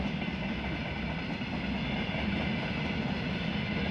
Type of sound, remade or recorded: recorded